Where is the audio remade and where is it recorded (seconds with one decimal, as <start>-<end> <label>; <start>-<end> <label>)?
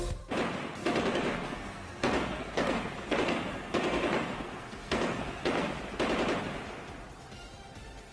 0.0-0.8 recorded; 0.8-5.7 remade; 5.7-8.1 recorded